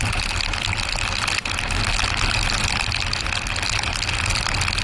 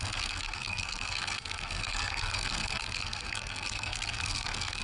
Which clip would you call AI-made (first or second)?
second